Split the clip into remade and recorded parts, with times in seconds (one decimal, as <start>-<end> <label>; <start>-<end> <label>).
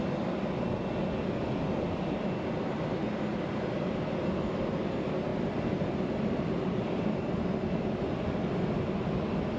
0.0-3.3 recorded; 3.3-3.9 remade; 3.9-5.3 recorded; 5.3-7.0 remade; 7.0-9.6 recorded